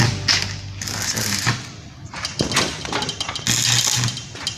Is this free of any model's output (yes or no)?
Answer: yes